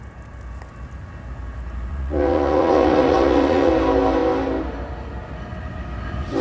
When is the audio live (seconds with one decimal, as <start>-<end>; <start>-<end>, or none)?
0.0-1.9; 3.7-6.4